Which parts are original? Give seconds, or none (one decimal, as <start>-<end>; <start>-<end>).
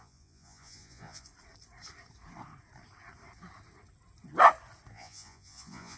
1.3-4.9